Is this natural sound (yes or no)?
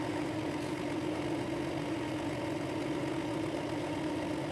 yes